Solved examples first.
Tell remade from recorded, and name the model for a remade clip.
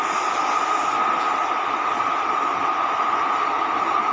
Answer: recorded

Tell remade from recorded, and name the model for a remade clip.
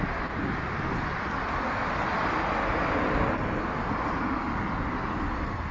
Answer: recorded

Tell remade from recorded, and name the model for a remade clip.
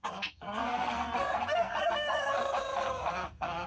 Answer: remade, codec, SNAC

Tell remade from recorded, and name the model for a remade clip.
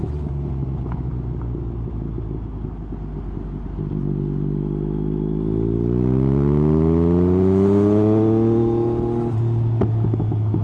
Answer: recorded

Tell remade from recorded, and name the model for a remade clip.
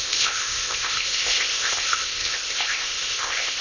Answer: remade, codec, ZipCodec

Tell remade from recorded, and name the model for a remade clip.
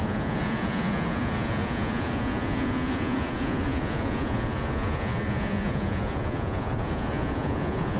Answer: remade, vocoder, Vocos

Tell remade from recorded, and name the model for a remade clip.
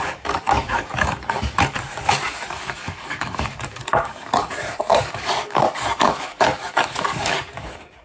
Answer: remade, codec, DAC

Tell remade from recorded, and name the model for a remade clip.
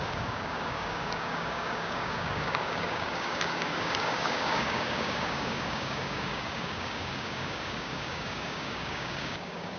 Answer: remade, codec, DAC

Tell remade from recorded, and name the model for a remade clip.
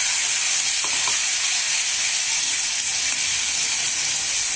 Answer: recorded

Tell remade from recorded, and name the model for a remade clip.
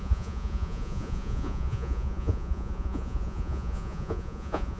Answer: remade, vocoder, Vocos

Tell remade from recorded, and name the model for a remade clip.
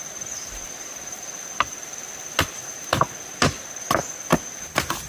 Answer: recorded